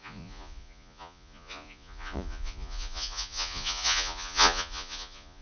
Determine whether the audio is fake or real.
fake